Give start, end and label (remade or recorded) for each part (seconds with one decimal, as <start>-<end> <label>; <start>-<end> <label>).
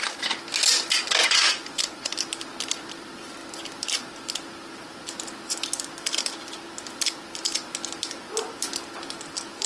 0.0-1.2 recorded; 1.2-2.1 remade; 2.1-9.7 recorded